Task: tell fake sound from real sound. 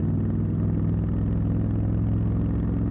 real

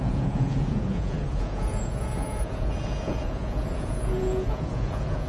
fake